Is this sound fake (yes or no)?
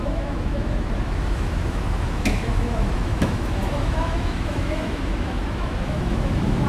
yes